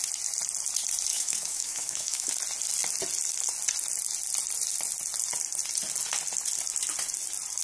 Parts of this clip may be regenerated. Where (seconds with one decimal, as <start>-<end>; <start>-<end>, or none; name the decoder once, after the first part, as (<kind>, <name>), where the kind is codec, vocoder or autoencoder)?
1.1-2.3 (autoencoder, DAC-VAE)